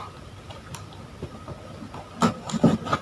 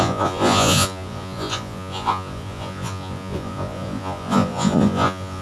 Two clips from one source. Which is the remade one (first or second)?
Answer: second